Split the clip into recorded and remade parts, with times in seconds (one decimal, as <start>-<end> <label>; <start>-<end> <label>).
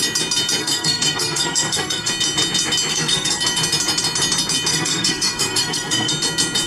0.0-0.6 recorded; 0.6-2.1 remade; 2.1-2.9 recorded; 2.9-3.4 remade; 3.4-4.7 recorded; 4.7-6.1 remade; 6.1-6.7 recorded